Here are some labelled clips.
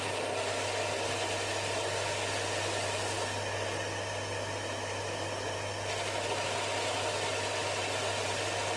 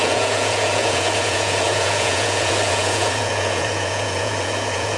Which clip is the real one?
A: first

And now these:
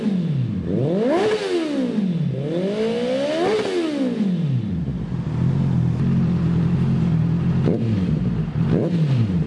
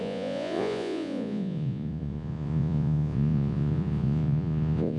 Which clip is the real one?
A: first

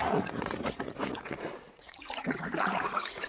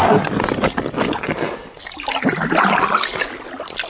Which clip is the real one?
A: second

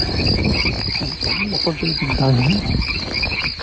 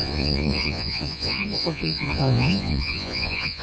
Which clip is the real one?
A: first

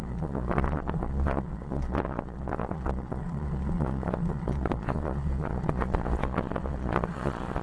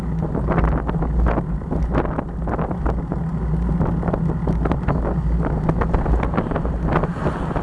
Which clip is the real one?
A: second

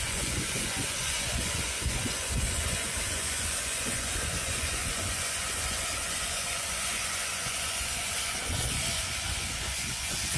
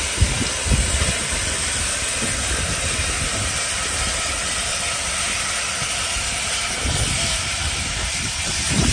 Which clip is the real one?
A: second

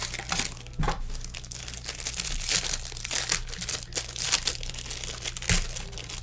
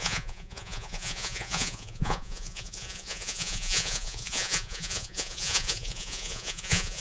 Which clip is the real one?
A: first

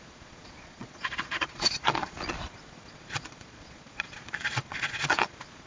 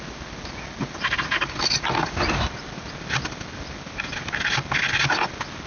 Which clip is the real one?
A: second